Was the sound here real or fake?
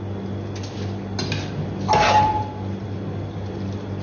real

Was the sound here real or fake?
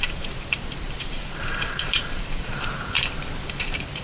fake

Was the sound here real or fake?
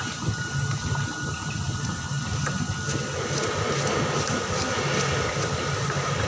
real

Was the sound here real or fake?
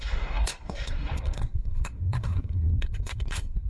fake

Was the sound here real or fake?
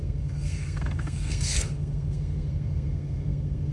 fake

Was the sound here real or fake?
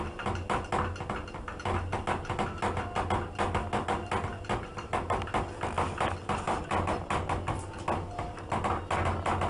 real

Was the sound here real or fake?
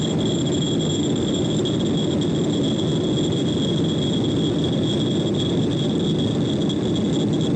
real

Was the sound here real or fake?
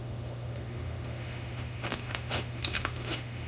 fake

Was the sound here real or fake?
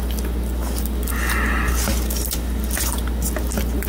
real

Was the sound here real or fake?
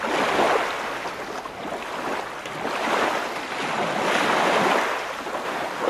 real